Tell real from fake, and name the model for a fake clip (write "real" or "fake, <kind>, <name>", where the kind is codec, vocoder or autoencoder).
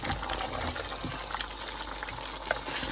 real